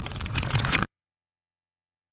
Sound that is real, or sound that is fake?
fake